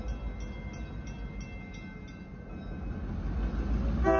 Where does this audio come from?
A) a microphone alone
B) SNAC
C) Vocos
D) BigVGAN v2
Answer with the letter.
A